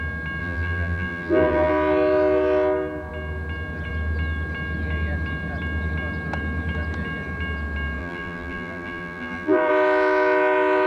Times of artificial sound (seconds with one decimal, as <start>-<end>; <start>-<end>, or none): 0.4-1.7; 8.0-9.7